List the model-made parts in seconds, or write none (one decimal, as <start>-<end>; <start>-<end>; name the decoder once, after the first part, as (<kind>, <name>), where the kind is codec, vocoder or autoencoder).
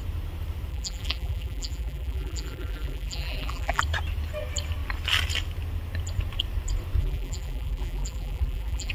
0.7-3.8 (vocoder, BigVGAN v2); 7.0-8.9